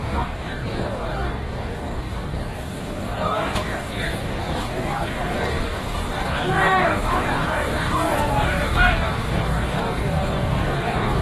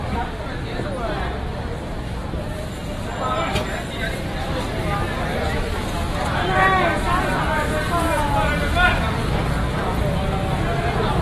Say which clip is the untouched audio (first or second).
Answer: second